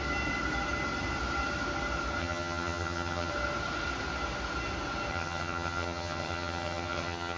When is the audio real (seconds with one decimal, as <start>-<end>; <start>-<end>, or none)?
0.0-2.2; 3.3-5.1